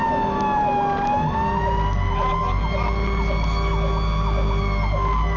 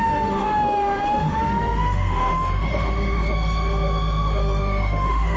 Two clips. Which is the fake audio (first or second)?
second